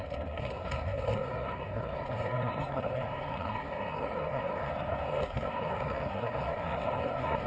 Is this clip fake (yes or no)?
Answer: yes